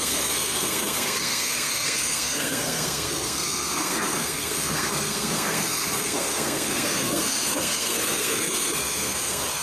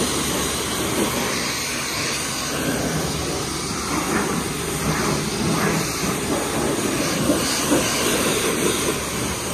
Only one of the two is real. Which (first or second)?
second